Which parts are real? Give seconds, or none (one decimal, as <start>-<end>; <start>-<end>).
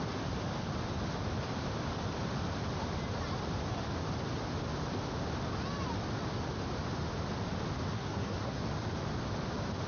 0.0-7.9; 8.6-9.9